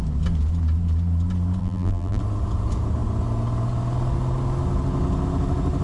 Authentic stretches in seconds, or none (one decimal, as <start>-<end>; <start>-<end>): 0.0-1.6; 2.2-5.8